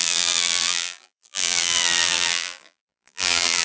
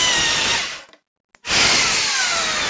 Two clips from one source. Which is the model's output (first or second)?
first